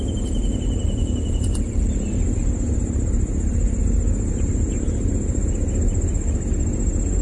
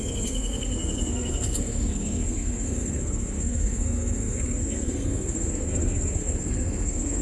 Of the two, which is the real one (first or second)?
first